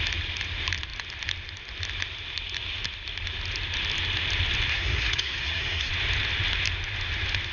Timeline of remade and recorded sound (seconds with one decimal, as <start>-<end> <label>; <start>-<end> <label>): 0.0-4.7 recorded; 4.7-5.9 remade; 5.9-7.5 recorded